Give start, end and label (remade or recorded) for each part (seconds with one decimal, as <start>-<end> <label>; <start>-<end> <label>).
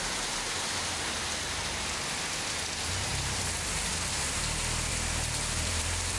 0.0-3.1 remade; 3.1-4.9 recorded; 4.9-6.2 remade